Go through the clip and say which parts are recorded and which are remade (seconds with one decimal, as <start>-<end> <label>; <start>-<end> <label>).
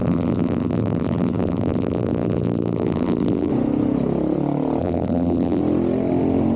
0.0-3.5 remade; 3.5-4.8 recorded; 4.8-5.6 remade; 5.6-6.6 recorded